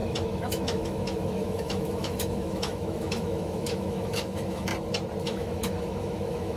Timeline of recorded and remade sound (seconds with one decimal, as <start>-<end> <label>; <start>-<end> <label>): 0.0-4.7 remade; 4.7-5.2 recorded; 5.2-6.6 remade